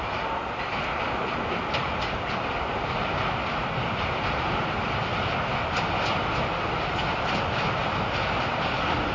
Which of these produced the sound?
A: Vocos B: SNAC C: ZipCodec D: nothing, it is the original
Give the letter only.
D